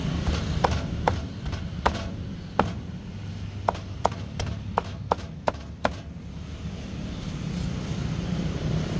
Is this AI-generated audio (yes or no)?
no